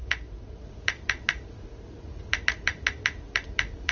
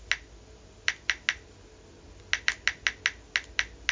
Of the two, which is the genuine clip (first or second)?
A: second